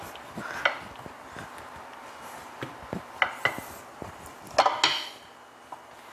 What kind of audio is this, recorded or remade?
recorded